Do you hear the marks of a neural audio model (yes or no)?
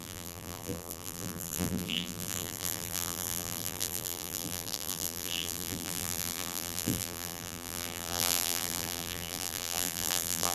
yes